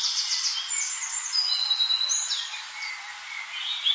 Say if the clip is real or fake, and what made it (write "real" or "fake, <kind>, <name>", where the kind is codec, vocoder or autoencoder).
real